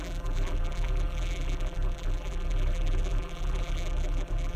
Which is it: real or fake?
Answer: fake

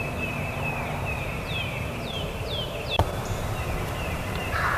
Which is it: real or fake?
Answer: fake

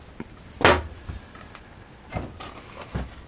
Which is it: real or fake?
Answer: real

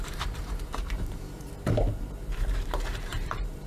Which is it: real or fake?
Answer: fake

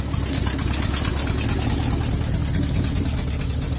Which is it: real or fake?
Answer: real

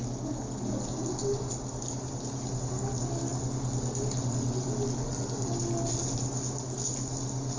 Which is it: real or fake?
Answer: real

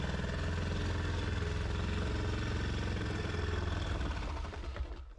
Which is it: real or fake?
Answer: real